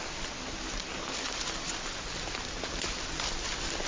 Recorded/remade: recorded